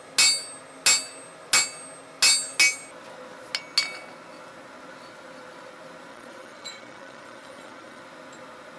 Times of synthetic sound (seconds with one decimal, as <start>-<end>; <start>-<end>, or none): 6.1-8.0